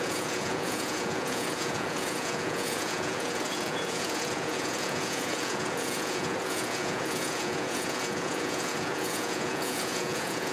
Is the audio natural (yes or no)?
no